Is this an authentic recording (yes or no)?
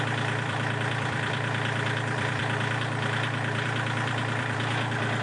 no